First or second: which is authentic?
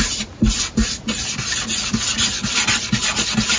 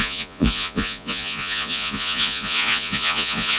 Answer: first